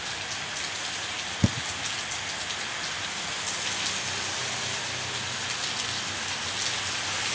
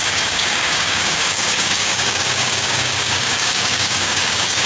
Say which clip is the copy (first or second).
second